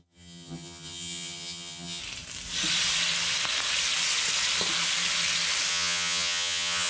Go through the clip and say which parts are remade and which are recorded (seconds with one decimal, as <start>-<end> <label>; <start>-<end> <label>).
0.0-2.0 remade; 2.0-5.7 recorded; 5.7-6.9 remade